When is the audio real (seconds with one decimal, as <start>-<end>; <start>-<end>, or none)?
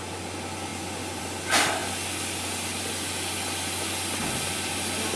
0.0-5.2